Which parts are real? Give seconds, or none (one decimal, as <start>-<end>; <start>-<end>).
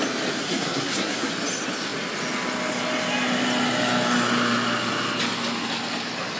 0.0-0.4; 1.3-6.4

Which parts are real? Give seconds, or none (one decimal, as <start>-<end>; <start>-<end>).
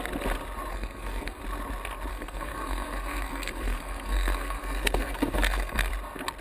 0.0-0.7; 1.4-2.1; 5.9-6.4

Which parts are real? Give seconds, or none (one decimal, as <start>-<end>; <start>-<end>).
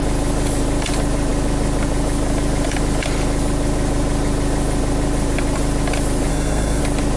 0.0-6.3; 6.8-7.2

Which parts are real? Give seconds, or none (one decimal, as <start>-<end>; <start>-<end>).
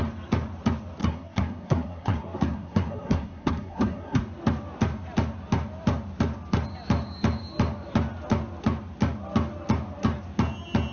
0.0-1.0; 4.2-10.9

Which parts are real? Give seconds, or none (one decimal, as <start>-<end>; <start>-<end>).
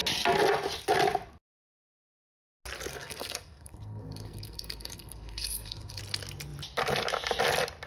0.0-2.9; 6.0-7.9